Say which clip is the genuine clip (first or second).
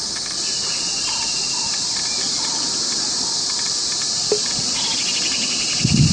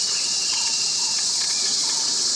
first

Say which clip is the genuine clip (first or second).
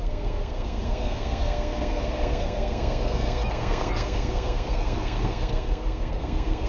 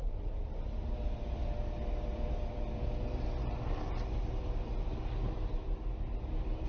second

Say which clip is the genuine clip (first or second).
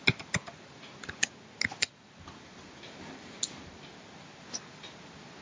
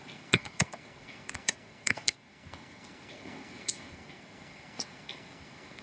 first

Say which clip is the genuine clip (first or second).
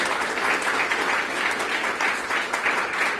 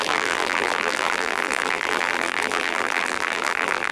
first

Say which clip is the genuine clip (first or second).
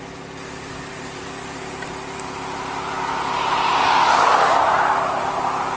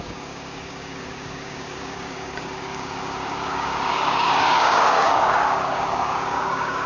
first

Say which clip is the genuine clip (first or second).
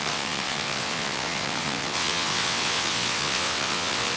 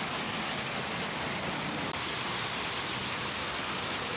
second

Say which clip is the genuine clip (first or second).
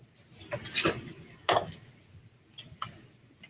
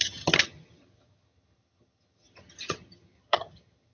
first